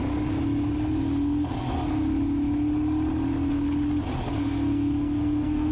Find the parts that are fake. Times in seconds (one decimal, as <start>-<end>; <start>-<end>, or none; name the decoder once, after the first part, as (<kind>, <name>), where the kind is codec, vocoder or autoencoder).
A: 4.4-5.7 (codec, SNAC)